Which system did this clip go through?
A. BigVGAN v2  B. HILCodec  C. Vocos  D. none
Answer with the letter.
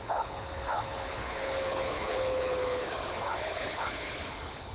B